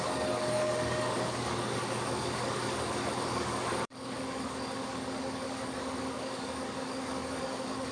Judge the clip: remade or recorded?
remade